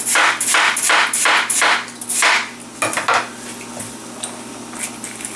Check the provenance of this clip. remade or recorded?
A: recorded